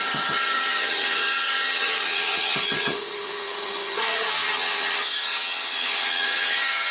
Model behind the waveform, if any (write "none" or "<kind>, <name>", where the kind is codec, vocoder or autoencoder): vocoder, HiFi-GAN